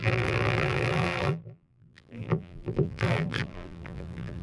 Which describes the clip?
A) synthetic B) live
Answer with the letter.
A